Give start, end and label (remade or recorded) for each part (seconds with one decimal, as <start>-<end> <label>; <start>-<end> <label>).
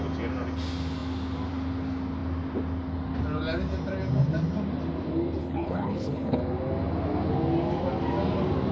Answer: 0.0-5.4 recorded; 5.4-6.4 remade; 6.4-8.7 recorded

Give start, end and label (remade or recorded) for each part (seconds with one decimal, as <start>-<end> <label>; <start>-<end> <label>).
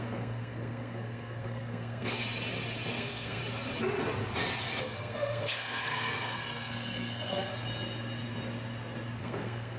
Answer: 0.0-2.2 remade; 2.2-2.9 recorded; 2.9-3.4 remade; 3.4-4.8 recorded; 4.8-7.5 remade; 7.5-9.2 recorded; 9.2-9.8 remade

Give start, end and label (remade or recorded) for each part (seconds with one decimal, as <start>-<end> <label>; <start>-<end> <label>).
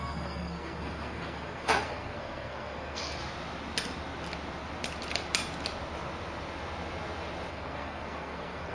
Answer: 0.0-3.2 remade; 3.2-7.5 recorded; 7.5-8.7 remade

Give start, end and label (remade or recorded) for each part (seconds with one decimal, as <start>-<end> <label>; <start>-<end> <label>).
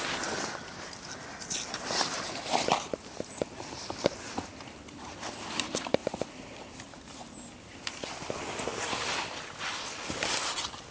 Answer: 0.0-10.9 recorded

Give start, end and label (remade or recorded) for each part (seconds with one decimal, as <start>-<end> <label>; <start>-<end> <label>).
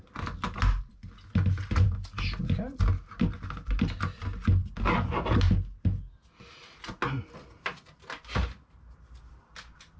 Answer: 0.0-10.0 recorded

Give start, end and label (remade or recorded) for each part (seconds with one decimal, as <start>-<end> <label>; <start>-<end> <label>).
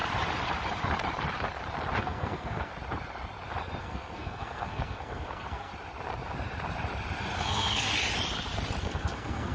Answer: 0.0-2.0 recorded; 2.0-2.7 remade; 2.7-3.8 recorded; 3.8-5.7 remade; 5.7-7.4 recorded; 7.4-7.9 remade; 7.9-8.8 recorded; 8.8-9.5 remade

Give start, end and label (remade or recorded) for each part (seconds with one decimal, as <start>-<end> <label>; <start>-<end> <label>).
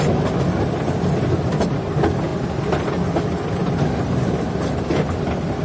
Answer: 0.0-5.6 recorded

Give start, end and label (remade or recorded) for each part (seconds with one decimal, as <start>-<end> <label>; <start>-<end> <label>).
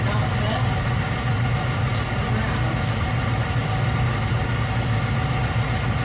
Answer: 0.0-6.0 recorded